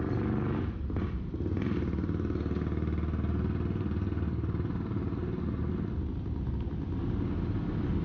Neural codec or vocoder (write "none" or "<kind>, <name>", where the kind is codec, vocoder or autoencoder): none